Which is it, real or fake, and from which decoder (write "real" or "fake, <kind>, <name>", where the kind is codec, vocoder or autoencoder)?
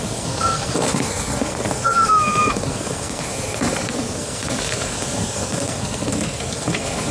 fake, codec, SNAC